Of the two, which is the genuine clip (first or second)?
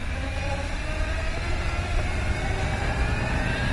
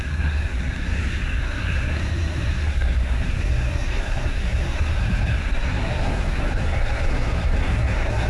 first